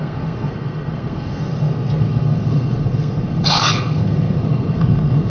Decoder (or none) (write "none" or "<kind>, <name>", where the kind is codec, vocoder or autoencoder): codec, SNAC